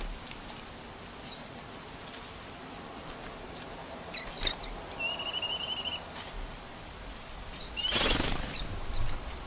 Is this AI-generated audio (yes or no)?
no